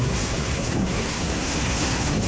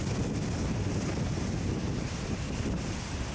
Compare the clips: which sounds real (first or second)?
second